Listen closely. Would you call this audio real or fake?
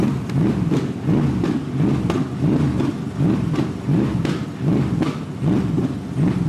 real